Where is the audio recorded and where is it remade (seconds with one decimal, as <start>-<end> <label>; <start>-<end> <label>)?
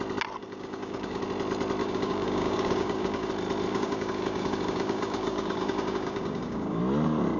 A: 0.0-0.4 recorded; 0.4-1.2 remade; 1.2-1.8 recorded; 1.8-3.3 remade; 3.3-3.7 recorded; 3.7-6.8 remade; 6.8-7.4 recorded